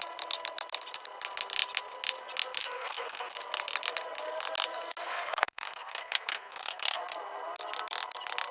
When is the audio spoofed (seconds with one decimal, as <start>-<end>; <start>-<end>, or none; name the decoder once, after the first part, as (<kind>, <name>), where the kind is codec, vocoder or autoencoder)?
2.6-3.3 (codec, SNAC); 5.0-7.0